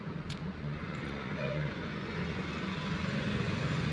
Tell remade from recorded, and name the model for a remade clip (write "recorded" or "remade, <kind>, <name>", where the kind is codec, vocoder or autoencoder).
remade, vocoder, Vocos